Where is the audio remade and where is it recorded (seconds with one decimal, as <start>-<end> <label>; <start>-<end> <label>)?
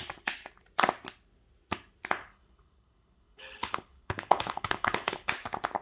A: 0.0-2.2 recorded; 2.2-5.3 remade; 5.3-5.8 recorded